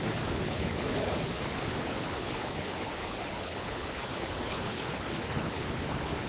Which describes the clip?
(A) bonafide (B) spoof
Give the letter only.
B